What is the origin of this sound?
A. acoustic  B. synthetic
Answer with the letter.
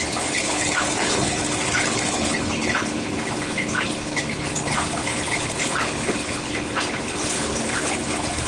B